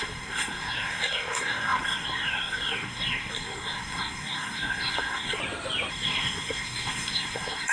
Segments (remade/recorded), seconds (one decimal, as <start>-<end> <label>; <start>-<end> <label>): 0.0-5.4 remade; 5.4-5.9 recorded; 5.9-7.7 remade